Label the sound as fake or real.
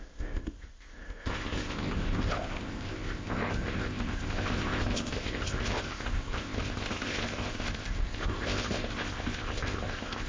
fake